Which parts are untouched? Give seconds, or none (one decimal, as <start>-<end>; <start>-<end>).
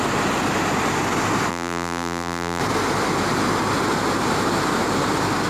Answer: 0.0-1.5; 2.6-5.5